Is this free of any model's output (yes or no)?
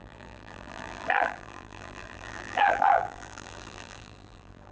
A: no